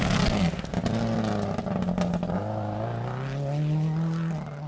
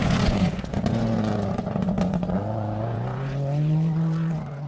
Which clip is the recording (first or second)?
first